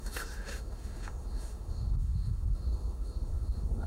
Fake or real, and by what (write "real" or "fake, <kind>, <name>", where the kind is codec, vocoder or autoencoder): fake, autoencoder, DAC-VAE